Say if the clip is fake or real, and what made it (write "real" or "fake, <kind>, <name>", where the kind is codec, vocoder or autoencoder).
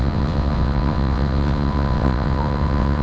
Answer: fake, vocoder, WaveNeXt